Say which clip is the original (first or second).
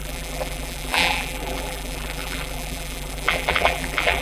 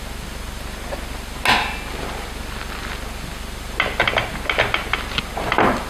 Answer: second